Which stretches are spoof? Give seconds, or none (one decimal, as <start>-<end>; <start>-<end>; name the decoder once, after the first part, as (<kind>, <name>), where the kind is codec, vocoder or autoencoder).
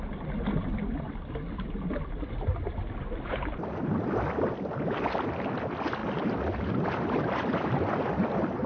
none